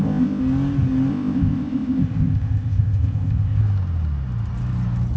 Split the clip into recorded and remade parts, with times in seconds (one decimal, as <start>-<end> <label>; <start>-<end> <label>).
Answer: 0.0-0.4 remade; 0.4-1.1 recorded; 1.1-3.6 remade; 3.6-5.2 recorded